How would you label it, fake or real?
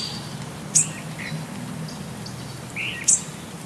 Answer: real